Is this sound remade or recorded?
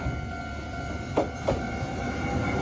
recorded